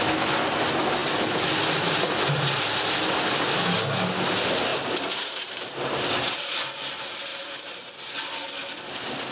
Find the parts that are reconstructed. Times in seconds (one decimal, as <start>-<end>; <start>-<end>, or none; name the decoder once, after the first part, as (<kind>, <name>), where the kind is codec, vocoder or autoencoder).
4.7-6.4 (vocoder, BigVGAN v2); 7.3-7.9